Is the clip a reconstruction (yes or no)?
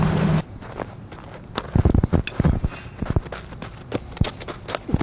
no